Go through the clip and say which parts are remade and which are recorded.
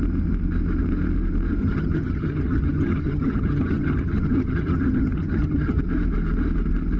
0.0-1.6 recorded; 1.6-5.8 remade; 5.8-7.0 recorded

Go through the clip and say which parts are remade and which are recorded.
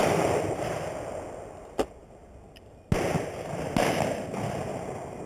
0.0-5.3 recorded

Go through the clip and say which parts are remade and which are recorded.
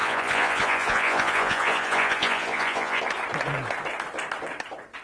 0.0-3.0 remade; 3.0-5.0 recorded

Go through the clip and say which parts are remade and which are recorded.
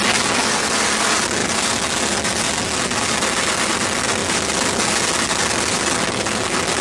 0.0-6.8 recorded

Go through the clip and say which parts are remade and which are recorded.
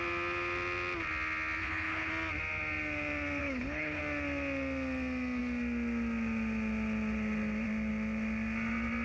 0.0-1.6 recorded; 1.6-2.1 remade; 2.1-3.4 recorded; 3.4-4.0 remade; 4.0-9.0 recorded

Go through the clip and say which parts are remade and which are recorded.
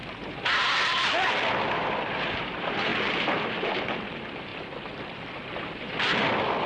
0.0-2.9 remade; 2.9-3.7 recorded; 3.7-6.7 remade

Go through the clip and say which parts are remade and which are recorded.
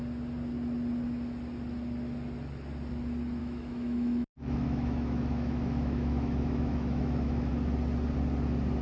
0.0-3.4 recorded; 3.4-7.5 remade; 7.5-8.8 recorded